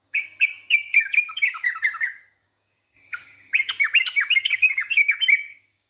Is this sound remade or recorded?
remade